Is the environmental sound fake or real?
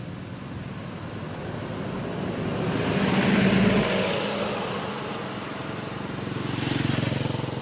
real